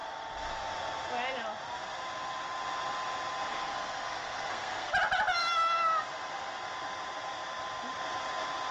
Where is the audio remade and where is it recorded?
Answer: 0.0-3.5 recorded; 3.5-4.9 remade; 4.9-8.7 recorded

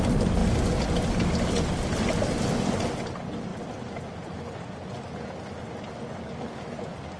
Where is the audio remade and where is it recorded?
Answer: 0.0-7.2 recorded